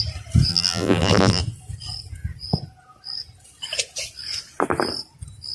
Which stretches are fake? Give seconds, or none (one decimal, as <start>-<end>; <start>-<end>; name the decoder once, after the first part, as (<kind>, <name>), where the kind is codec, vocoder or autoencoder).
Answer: 0.5-1.4 (vocoder, BigVGAN v2)